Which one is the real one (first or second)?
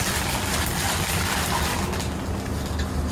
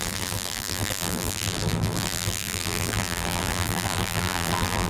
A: first